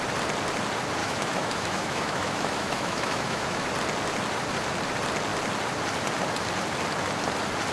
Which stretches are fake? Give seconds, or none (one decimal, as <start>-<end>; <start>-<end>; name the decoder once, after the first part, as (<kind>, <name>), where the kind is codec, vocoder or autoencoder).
1.0-3.7 (autoencoder, DAC-VAE)